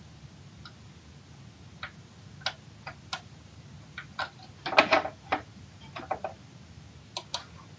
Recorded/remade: recorded